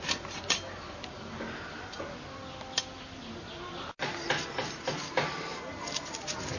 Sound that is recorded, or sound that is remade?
recorded